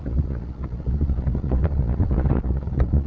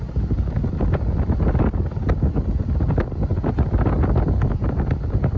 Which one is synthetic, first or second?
first